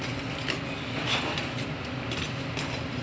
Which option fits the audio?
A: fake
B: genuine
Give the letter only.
B